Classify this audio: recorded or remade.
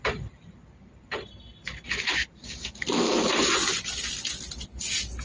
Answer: recorded